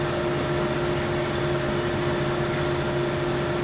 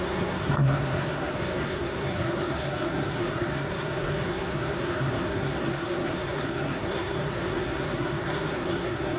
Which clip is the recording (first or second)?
first